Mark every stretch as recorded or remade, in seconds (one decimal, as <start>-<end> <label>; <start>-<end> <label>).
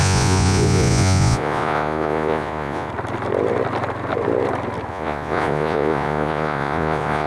0.0-2.9 remade; 2.9-4.9 recorded; 4.9-7.3 remade